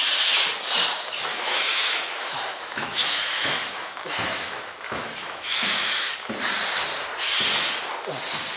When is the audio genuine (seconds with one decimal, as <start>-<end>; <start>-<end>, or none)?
0.0-1.3; 6.1-8.6